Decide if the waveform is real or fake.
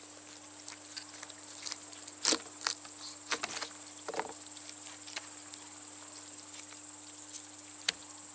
real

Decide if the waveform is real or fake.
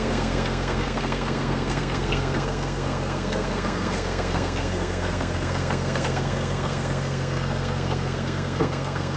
fake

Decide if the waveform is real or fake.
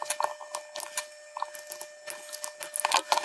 real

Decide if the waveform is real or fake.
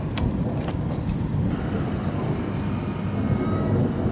real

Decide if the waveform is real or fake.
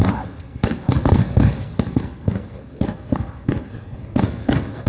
fake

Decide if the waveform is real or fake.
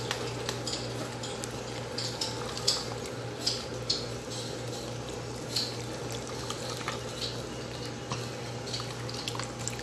real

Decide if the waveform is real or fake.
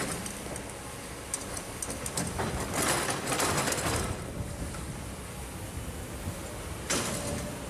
real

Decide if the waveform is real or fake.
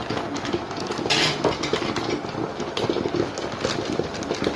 real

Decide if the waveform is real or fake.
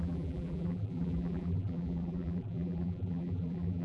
fake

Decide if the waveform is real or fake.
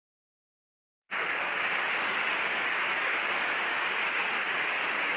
fake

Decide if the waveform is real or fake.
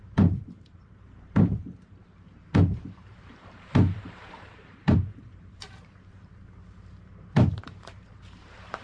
fake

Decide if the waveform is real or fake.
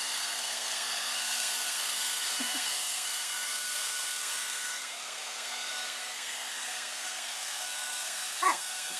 fake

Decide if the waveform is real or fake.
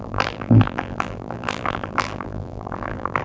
fake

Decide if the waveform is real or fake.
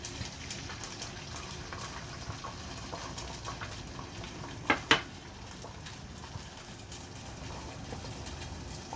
real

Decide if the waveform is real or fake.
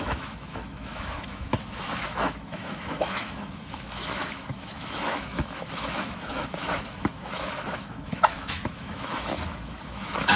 fake